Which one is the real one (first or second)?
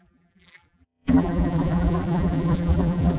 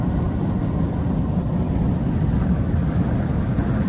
second